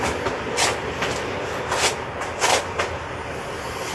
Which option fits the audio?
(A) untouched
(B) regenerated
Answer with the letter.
A